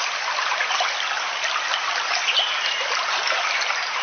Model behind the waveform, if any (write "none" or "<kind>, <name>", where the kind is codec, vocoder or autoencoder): none